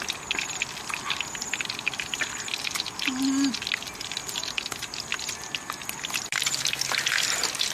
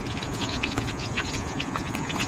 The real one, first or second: first